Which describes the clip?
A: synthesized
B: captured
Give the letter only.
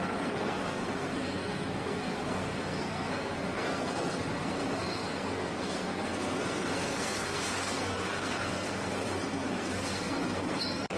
A